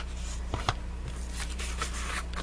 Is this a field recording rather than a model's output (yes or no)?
no